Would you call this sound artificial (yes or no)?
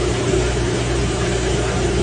no